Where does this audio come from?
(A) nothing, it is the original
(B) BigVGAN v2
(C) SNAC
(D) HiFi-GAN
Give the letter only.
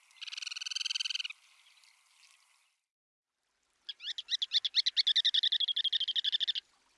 A